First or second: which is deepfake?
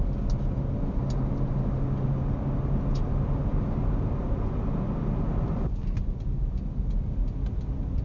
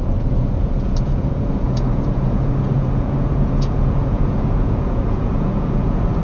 second